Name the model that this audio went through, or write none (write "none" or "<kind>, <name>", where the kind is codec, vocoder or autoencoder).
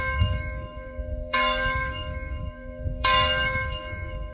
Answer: codec, DAC